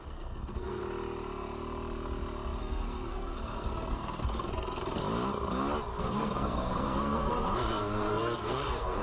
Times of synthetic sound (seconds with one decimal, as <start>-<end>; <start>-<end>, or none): 0.0-0.8; 2.6-5.0; 6.0-9.0